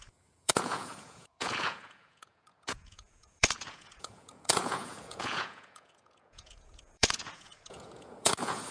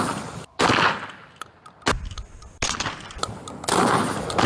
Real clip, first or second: second